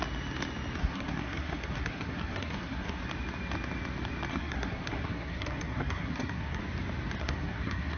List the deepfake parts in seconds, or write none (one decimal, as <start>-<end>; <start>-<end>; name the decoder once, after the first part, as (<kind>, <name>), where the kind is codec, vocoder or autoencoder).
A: 0.8-3.0 (codec, SNAC); 4.3-6.6; 7.2-8.0